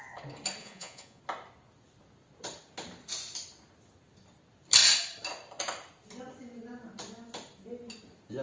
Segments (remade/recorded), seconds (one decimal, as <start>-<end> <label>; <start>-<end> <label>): 0.0-0.6 recorded; 0.6-1.2 remade; 1.2-8.4 recorded